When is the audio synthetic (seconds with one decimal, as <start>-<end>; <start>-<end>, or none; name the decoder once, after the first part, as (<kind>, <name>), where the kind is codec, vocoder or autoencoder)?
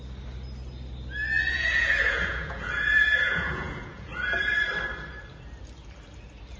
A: 1.5-4.1 (vocoder, Vocos)